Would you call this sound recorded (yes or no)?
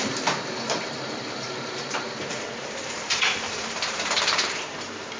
no